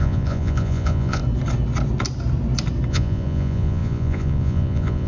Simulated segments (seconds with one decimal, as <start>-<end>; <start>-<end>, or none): 0.0-1.2; 2.9-5.1